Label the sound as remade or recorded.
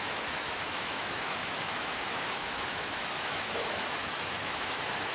remade